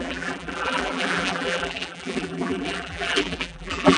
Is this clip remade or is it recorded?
remade